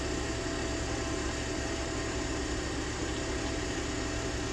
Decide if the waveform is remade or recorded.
recorded